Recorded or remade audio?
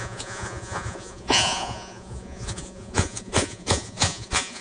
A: remade